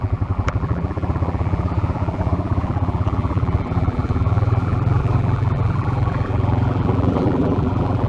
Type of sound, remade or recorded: remade